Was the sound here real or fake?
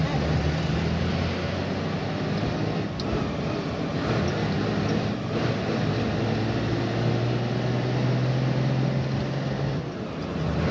real